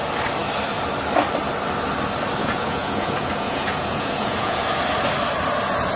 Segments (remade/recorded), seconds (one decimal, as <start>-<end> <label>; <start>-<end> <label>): 0.0-2.4 recorded; 2.4-4.7 remade; 4.7-6.0 recorded